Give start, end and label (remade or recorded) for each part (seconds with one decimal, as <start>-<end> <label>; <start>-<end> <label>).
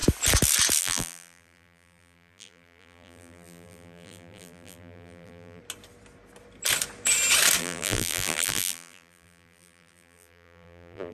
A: 0.0-0.8 recorded; 0.8-5.6 remade; 5.6-7.6 recorded; 7.6-11.1 remade